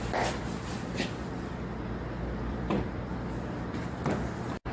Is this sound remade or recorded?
remade